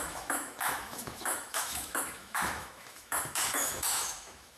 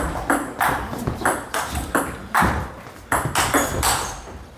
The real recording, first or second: second